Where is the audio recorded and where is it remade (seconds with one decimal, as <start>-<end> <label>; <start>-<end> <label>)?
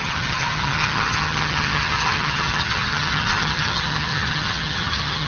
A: 0.0-5.3 remade